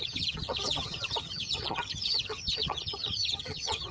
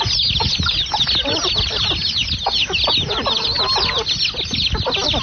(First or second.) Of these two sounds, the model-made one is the first